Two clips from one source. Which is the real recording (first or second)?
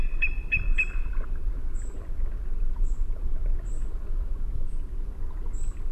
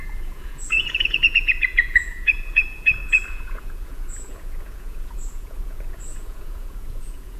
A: first